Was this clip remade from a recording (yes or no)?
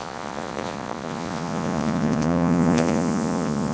yes